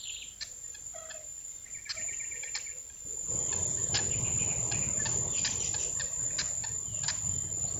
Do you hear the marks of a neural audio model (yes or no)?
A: no